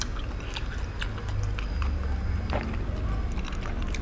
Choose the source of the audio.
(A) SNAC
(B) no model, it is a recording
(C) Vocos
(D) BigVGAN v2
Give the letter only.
B